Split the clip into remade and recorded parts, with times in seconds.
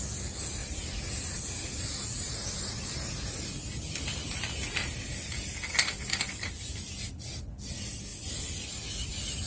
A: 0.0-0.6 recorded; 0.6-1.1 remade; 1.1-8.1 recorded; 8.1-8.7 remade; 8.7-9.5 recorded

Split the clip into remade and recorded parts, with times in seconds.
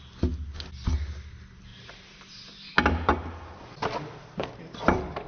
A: 0.0-1.7 recorded; 1.7-2.7 remade; 2.7-5.3 recorded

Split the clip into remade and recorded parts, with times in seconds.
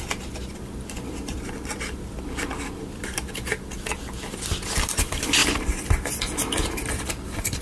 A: 0.0-5.4 remade; 5.4-6.7 recorded; 6.7-7.6 remade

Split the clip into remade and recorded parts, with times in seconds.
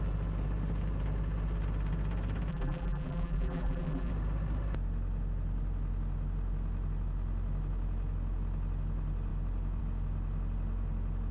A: 0.0-2.5 recorded; 2.5-4.1 remade; 4.1-11.3 recorded